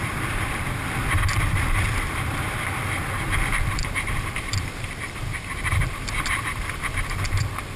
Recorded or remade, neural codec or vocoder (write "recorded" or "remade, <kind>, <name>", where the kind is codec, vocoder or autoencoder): remade, vocoder, BigVGAN v2